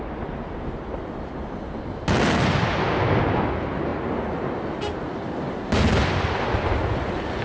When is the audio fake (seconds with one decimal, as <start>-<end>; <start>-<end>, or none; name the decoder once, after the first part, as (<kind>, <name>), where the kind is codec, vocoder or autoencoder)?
none

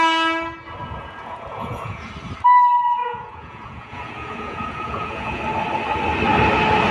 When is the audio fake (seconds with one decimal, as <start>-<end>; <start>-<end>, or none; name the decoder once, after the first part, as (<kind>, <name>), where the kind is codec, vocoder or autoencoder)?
0.8-2.1 (vocoder, Vocos); 3.0-5.4

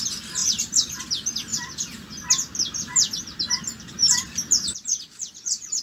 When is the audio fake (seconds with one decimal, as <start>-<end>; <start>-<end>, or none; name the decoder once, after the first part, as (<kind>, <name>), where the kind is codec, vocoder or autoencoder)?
0.4-1.0 (vocoder, BigVGAN v2); 4.0-5.8